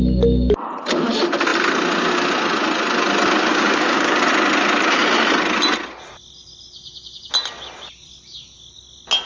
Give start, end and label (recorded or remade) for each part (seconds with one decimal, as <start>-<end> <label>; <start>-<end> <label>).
0.0-3.5 recorded; 3.5-4.2 remade; 4.2-9.3 recorded